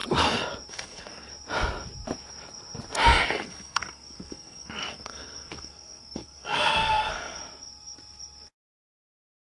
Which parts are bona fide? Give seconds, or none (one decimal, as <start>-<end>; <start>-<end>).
0.0-0.7; 1.3-3.3; 7.4-8.9